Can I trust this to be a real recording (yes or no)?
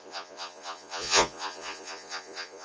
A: no